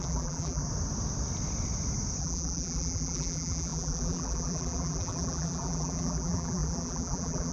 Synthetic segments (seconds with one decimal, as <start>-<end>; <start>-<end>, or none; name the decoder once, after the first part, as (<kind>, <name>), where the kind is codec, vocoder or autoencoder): 0.0-0.6 (vocoder, BigVGAN v2); 2.2-7.5